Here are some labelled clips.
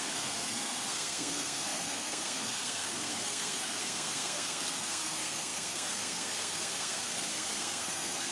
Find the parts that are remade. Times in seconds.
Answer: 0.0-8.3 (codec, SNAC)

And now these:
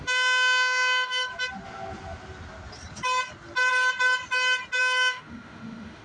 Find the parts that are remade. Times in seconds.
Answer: 0.0-1.3 (autoencoder, DAC-VAE); 4.8-6.0

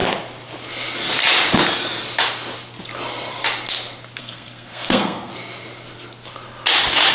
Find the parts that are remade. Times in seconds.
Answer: 4.2-5.3 (codec, SNAC)

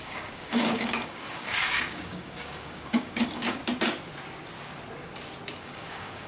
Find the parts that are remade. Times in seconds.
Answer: 0.0-3.6 (codec, DAC); 5.6-6.3

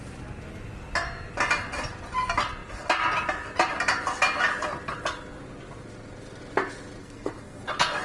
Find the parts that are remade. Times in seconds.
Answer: 7.0-7.6 (codec, SNAC)